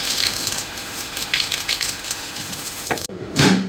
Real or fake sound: fake